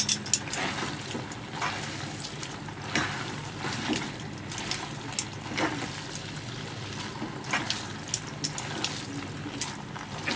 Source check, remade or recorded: recorded